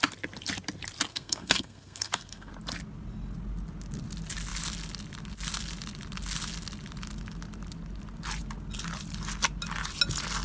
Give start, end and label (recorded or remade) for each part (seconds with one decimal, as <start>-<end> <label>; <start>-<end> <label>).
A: 0.0-1.1 recorded; 1.1-2.5 remade; 2.5-10.4 recorded